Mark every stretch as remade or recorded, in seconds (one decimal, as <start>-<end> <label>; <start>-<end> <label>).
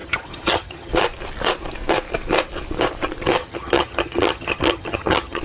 0.0-0.9 remade; 0.9-3.4 recorded; 3.4-5.4 remade